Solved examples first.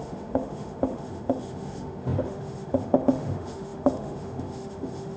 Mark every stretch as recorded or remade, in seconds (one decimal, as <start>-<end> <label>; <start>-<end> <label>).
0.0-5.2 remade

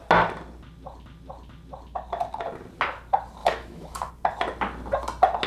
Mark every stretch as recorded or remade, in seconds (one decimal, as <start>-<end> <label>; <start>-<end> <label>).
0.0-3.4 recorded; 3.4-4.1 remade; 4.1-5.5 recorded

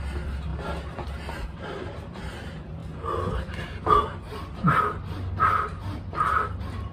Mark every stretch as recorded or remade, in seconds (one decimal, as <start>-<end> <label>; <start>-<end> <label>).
0.0-6.9 recorded

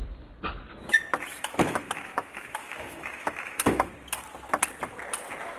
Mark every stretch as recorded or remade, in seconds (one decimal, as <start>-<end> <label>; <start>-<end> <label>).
0.0-1.3 recorded; 1.3-3.9 remade; 3.9-5.6 recorded

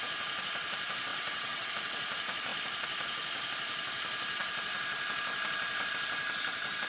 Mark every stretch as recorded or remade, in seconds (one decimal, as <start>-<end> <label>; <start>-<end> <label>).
0.0-1.1 recorded; 1.1-1.7 remade; 1.7-6.9 recorded

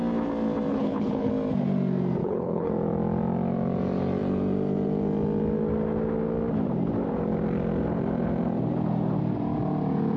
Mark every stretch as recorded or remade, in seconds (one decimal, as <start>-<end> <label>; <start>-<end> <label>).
0.0-0.7 recorded; 0.7-1.3 remade; 1.3-2.2 recorded; 2.2-2.7 remade; 2.7-10.2 recorded

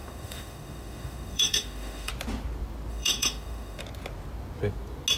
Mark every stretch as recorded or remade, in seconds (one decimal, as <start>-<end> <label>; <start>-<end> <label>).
0.0-2.1 remade; 2.1-2.9 recorded; 2.9-3.8 remade; 3.8-5.2 recorded

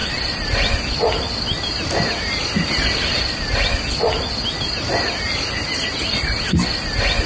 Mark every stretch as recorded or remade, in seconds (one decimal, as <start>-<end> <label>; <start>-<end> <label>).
0.0-7.3 recorded